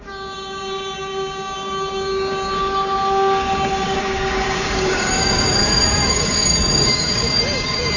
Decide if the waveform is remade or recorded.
remade